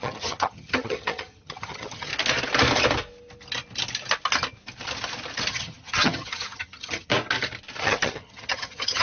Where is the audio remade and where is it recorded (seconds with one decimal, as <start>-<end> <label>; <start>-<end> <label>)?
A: 0.0-2.1 remade; 2.1-5.5 recorded; 5.5-7.1 remade; 7.1-7.8 recorded; 7.8-9.0 remade